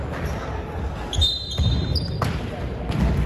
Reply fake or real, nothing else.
real